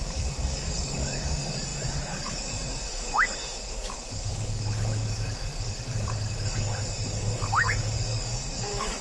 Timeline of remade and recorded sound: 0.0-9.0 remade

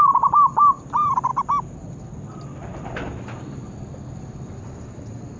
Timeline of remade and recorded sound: 0.0-5.4 recorded

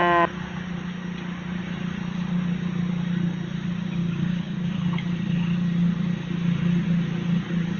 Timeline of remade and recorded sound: 0.0-4.0 recorded; 4.0-4.6 remade; 4.6-7.8 recorded

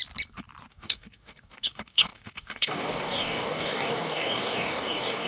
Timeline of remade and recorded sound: 0.0-0.7 recorded; 0.7-5.3 remade